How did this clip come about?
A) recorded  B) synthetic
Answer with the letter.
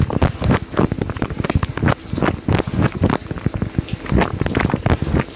A